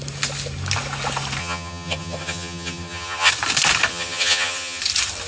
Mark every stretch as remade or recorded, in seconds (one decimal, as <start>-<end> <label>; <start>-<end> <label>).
0.0-1.4 recorded; 1.4-3.3 remade; 3.3-3.9 recorded; 3.9-4.8 remade; 4.8-5.3 recorded